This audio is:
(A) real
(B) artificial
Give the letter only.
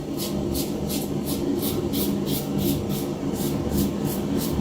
A